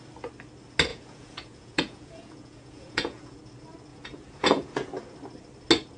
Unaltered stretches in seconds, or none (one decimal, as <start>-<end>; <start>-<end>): 0.0-0.9; 3.4-3.9; 4.9-6.0